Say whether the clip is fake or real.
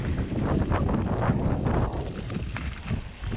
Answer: real